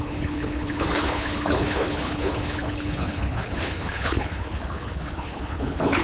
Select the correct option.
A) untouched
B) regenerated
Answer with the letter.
B